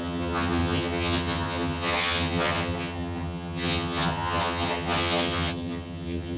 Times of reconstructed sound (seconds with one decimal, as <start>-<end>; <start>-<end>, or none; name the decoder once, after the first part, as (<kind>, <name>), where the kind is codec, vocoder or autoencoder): 0.0-6.4 (vocoder, HiFi-GAN)